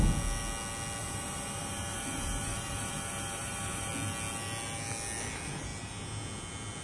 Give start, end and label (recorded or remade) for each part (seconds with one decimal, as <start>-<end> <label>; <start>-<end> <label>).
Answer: 0.0-1.0 recorded; 1.0-3.9 remade; 3.9-6.8 recorded